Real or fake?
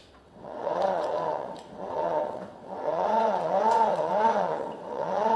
fake